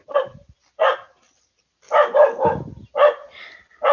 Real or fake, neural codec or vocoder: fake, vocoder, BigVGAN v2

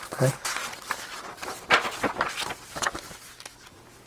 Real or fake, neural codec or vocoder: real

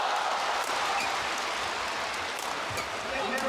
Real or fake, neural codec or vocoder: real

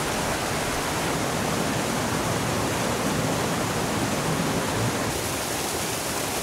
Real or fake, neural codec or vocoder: real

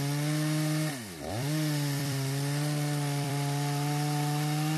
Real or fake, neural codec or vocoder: fake, vocoder, BigVGAN v2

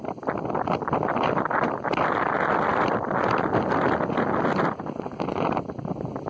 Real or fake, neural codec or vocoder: real